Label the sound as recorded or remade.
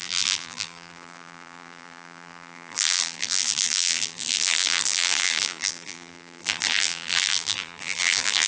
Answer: remade